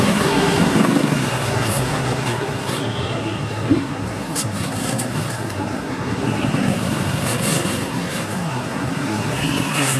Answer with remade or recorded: remade